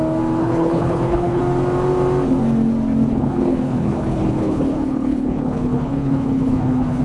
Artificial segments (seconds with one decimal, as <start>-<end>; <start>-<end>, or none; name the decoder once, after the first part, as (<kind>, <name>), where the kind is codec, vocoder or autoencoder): 0.4-1.4 (codec, HILCodec); 3.1-7.0